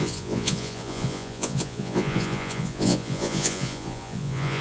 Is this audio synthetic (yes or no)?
yes